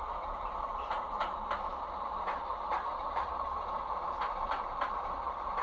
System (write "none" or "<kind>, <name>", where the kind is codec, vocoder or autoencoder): none